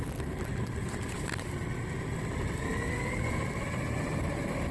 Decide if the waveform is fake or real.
real